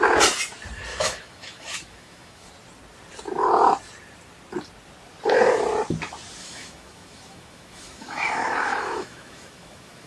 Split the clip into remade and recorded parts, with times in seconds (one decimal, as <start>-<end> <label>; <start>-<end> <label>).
0.0-0.9 recorded; 0.9-2.5 remade; 2.5-6.4 recorded; 6.4-10.1 remade